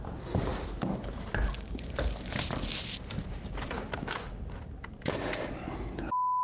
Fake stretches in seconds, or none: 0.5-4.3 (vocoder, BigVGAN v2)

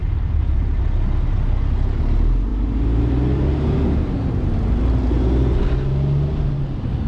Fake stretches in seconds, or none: 0.0-0.8 (vocoder, BigVGAN v2)

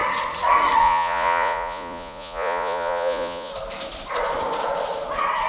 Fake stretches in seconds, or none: 0.8-3.5 (vocoder, Vocos)

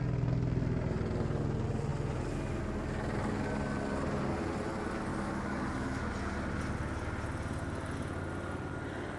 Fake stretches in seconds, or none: 5.1-6.1 (codec, DAC)

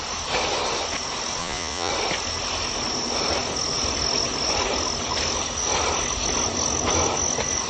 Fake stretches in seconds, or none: 1.4-1.9 (vocoder, Vocos)

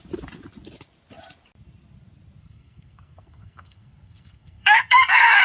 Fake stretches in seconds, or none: 2.4-5.4 (codec, SNAC)